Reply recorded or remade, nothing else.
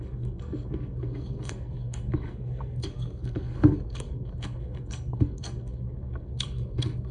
remade